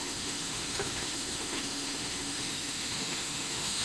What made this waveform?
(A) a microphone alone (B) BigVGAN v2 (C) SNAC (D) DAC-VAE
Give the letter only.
D